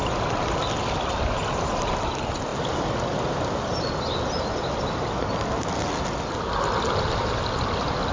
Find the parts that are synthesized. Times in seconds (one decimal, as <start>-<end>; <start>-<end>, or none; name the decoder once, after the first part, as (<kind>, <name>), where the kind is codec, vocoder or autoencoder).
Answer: none